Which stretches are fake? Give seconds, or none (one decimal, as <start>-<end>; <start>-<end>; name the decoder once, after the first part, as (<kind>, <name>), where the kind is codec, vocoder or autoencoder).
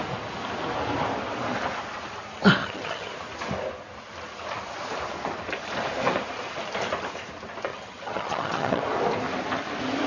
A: 2.6-3.1 (vocoder, HiFi-GAN); 7.7-8.8